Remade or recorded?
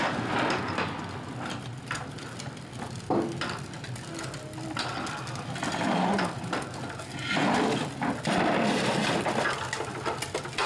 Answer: recorded